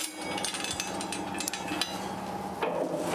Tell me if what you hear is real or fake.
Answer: real